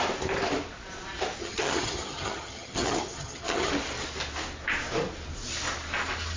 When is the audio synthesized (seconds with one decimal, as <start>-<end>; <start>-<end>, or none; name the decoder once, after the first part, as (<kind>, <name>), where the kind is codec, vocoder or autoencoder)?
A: 1.4-3.7 (vocoder, HiFi-GAN)